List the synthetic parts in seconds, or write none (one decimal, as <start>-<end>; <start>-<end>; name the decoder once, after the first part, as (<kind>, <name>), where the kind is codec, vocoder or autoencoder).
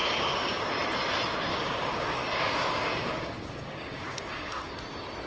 0.0-0.7 (codec, DAC); 1.5-4.7